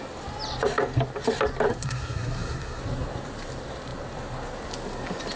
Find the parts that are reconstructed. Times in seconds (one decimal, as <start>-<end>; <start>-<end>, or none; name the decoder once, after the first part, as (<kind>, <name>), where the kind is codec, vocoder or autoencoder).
1.7-2.8 (codec, SNAC)

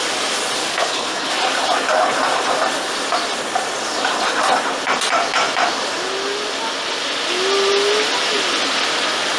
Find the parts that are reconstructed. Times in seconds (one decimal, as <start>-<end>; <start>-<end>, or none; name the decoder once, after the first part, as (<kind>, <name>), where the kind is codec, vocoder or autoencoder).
0.7-1.3 (codec, HILCodec)

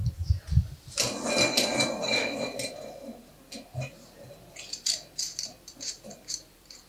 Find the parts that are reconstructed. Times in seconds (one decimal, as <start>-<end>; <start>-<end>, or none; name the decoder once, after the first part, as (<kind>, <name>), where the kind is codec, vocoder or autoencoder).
none

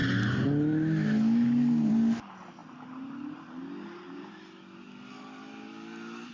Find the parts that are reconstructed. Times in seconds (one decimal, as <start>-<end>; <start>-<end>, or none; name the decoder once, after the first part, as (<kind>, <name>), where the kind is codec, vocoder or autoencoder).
none

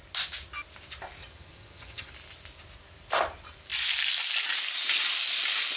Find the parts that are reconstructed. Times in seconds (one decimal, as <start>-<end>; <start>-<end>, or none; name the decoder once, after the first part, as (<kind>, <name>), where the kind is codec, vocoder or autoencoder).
1.2-2.1 (vocoder, HiFi-GAN)